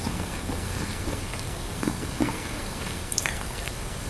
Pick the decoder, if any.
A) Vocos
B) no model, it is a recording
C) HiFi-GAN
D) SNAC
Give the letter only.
D